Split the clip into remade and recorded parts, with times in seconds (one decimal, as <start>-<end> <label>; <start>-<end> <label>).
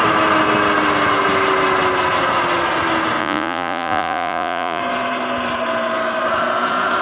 0.0-3.2 recorded; 3.2-4.8 remade; 4.8-7.0 recorded